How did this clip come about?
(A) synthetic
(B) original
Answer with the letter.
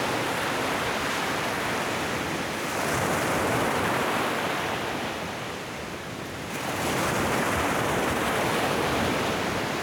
B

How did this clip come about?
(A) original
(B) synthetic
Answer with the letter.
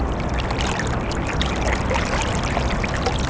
A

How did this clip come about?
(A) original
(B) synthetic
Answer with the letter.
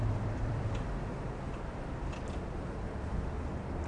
B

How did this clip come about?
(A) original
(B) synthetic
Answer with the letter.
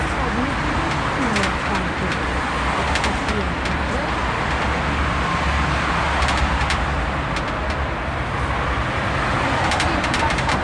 A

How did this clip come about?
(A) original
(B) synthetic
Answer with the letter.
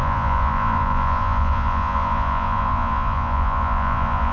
B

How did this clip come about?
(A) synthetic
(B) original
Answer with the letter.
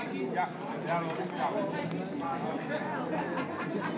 B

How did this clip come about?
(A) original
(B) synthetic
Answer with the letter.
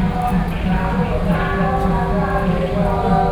A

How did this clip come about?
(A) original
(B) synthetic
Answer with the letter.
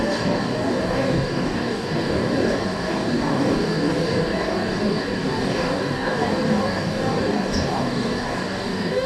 B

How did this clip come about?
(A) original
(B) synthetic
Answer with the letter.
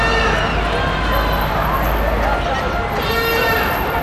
A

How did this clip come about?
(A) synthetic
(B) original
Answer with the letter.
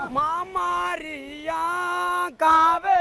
A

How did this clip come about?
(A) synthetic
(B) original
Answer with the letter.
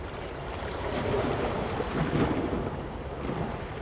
B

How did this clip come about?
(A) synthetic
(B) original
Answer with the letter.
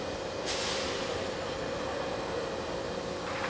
B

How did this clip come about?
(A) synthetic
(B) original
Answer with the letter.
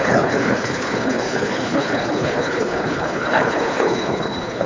A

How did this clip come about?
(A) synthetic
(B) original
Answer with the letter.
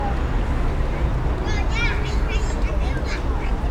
B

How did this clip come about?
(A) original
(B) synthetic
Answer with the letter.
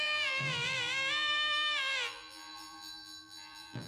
B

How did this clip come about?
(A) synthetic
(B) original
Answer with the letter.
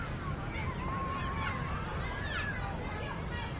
B